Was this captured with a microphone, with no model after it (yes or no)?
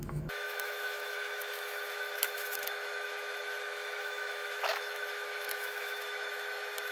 no